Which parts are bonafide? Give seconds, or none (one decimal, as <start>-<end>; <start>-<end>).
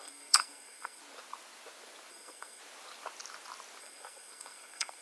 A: 1.0-2.1; 2.6-3.8